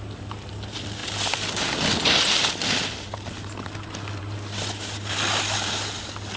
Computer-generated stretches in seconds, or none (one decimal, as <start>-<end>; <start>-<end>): none